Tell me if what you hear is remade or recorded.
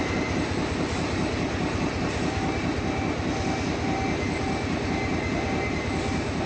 recorded